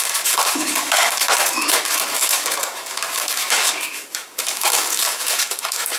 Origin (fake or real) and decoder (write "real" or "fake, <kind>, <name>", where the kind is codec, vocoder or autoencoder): fake, codec, DAC